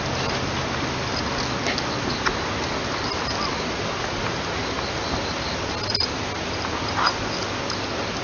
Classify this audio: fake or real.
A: real